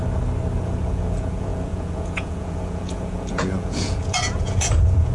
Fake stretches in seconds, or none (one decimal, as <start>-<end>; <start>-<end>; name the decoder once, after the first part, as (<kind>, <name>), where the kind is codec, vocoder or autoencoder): 0.6-5.1 (vocoder, Vocos)